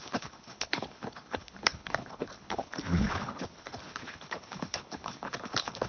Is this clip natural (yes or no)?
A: no